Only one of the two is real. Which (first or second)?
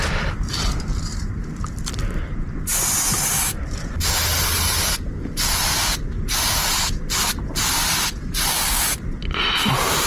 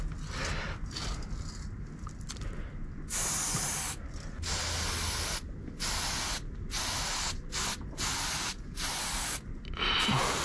second